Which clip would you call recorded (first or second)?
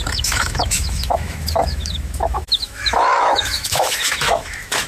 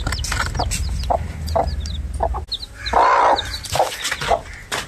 second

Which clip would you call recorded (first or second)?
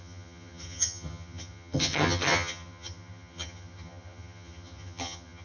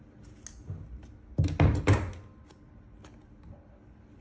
second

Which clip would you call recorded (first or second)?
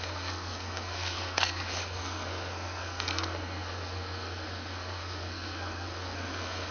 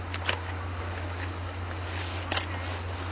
second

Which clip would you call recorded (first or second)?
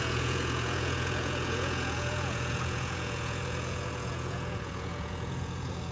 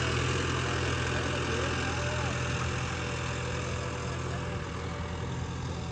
second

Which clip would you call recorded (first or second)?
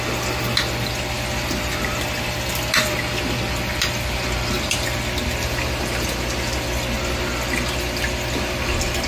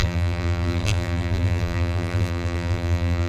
first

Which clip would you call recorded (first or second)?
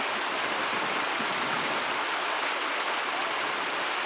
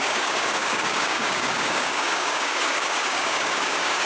first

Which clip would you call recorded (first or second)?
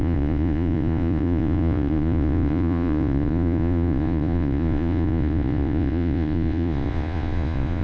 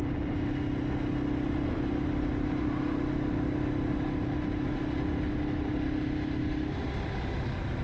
second